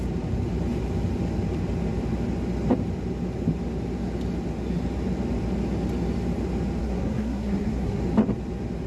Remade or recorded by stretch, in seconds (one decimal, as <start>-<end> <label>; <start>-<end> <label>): 0.0-6.8 recorded; 6.8-8.0 remade; 8.0-8.9 recorded